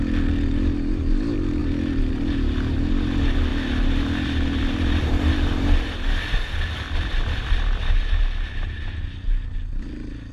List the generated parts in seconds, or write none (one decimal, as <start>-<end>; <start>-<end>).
3.5-8.1